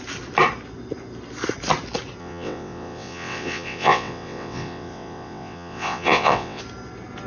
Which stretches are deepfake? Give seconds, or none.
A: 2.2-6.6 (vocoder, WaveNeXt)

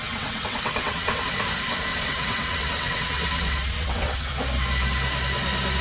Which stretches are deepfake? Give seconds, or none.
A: 0.0-1.4 (vocoder, WaveNeXt); 1.9-4.3

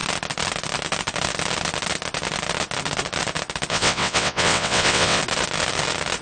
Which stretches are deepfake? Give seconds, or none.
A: 3.7-5.2 (vocoder, WaveNeXt)